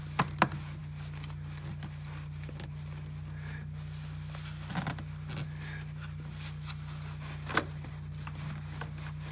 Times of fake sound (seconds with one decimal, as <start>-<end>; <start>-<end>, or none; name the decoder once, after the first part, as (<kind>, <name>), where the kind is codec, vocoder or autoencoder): none